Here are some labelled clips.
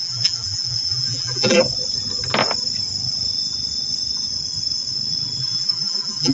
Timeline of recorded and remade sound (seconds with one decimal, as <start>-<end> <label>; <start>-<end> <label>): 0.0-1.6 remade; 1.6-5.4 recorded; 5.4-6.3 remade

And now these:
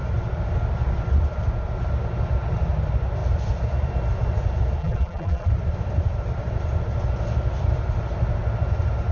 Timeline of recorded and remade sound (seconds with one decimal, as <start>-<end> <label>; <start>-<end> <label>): 0.0-4.8 recorded; 4.8-5.5 remade; 5.5-9.1 recorded

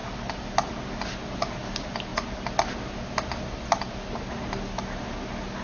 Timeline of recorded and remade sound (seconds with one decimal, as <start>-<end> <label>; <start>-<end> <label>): 0.0-5.6 recorded